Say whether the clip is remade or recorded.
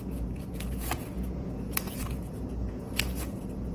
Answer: remade